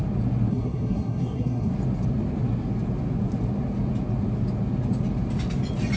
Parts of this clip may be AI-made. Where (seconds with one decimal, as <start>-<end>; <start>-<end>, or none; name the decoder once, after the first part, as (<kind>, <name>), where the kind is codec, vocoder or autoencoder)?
0.5-1.7 (codec, SNAC)